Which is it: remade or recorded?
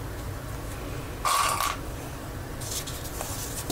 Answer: recorded